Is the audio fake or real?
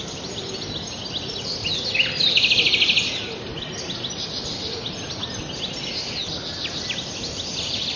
real